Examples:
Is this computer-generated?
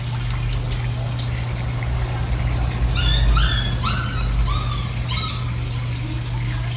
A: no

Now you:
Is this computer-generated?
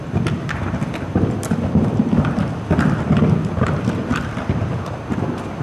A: no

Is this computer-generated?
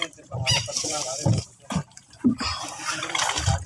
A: yes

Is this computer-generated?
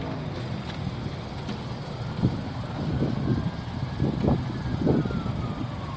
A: no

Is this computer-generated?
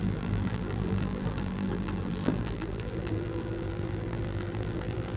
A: yes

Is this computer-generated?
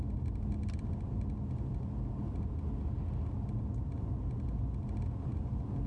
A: no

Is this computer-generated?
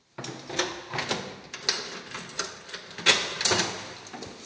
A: no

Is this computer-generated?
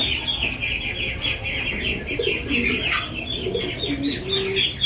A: no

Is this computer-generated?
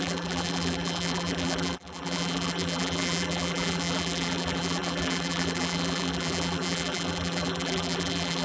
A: yes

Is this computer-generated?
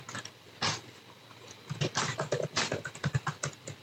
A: no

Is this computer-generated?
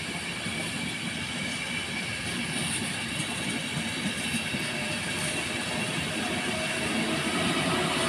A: yes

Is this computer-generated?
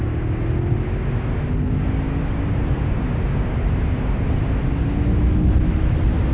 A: no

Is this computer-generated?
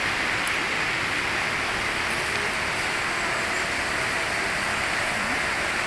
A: no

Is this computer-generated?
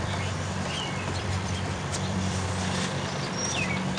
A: yes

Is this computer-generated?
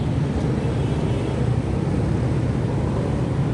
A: no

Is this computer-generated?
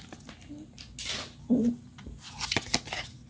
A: no